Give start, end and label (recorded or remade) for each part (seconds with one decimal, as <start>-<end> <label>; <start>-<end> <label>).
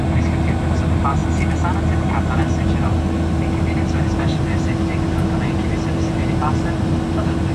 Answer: 0.0-7.5 recorded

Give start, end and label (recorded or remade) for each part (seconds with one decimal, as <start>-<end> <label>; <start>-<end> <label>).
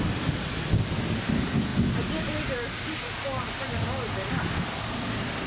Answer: 0.0-5.5 recorded